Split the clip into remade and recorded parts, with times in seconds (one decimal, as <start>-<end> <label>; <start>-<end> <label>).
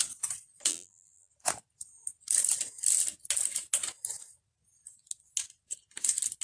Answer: 0.0-0.7 recorded; 0.7-1.3 remade; 1.3-6.4 recorded